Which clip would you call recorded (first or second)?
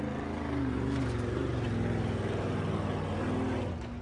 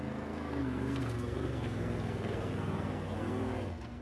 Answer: first